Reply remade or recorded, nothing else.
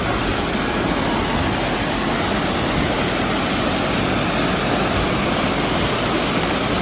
recorded